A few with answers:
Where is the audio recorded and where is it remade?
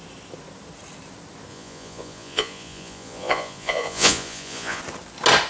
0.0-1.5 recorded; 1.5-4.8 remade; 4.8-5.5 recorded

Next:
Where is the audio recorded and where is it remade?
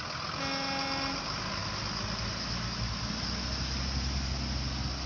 0.0-5.1 recorded